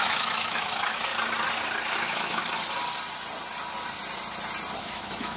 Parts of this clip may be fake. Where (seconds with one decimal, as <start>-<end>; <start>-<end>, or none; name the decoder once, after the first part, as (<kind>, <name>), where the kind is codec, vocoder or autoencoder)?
0.0-1.1 (autoencoder, DAC-VAE); 1.9-2.4; 4.8-5.4